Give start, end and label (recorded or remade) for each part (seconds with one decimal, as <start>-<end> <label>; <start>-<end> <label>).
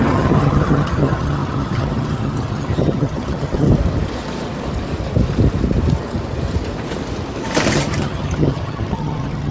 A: 0.0-3.7 remade; 3.7-7.7 recorded; 7.7-9.5 remade